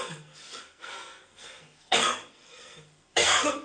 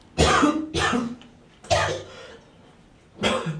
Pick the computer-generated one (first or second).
first